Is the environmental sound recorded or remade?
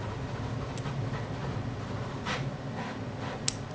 recorded